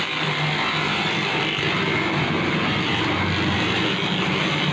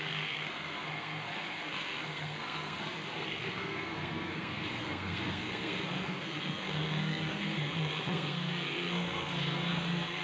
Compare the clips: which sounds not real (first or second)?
second